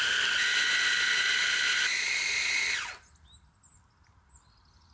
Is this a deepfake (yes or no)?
no